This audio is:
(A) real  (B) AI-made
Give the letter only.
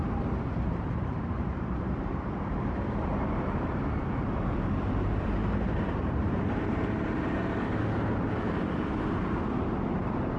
B